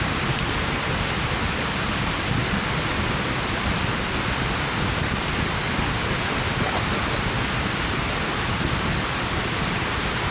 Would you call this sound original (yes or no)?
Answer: yes